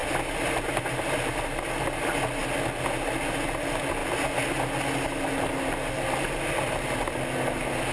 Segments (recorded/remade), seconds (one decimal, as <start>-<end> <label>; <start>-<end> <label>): 0.0-7.9 recorded